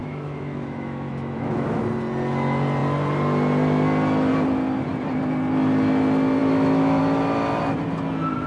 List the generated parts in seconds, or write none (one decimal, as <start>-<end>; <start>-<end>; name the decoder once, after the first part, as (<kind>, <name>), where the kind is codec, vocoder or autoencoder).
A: 0.0-1.8 (autoencoder, DAC-VAE); 6.4-7.0